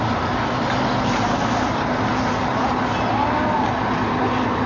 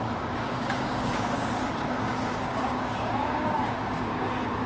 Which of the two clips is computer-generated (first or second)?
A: second